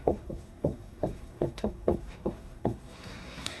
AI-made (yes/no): yes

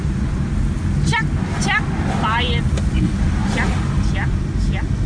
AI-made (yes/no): no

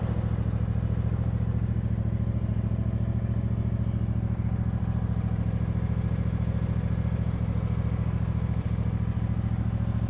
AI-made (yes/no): no